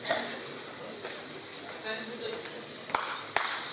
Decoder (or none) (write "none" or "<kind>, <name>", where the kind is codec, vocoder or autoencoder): none